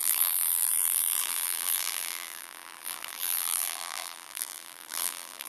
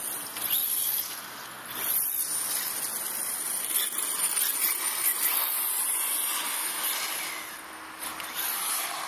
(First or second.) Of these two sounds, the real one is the second